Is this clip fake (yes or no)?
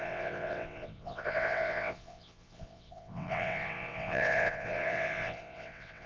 yes